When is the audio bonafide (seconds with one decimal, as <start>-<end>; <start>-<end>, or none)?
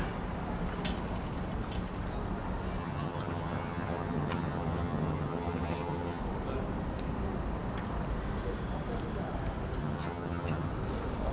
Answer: 0.0-2.8; 6.2-9.8; 10.7-11.3